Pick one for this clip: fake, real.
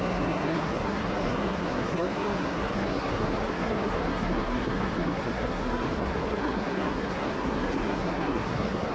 fake